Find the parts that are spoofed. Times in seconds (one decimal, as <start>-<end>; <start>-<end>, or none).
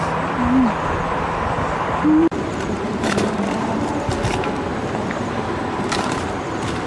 2.2-4.1; 4.7-6.4